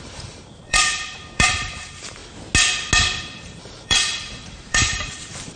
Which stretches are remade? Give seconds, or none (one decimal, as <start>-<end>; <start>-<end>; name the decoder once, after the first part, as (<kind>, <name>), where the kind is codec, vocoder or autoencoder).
0.0-2.2 (vocoder, BigVGAN v2); 3.2-5.6